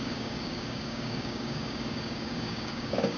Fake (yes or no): yes